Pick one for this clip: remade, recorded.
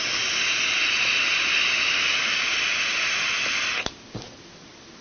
recorded